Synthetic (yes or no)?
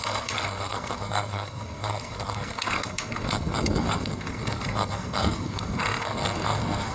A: yes